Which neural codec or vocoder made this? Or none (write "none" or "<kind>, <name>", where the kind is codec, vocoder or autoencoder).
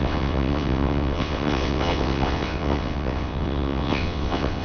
vocoder, WaveNeXt